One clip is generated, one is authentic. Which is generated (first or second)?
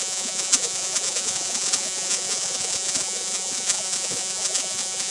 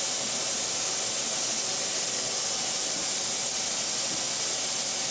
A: first